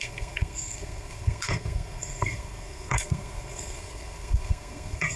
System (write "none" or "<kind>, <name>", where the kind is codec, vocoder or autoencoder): codec, SNAC